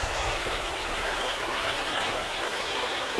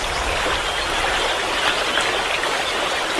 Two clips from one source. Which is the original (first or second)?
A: second